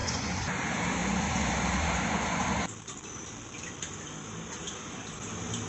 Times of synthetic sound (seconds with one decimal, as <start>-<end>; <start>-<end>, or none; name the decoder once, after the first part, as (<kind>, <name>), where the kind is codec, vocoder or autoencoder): 0.0-0.6 (vocoder, Vocos); 1.0-2.4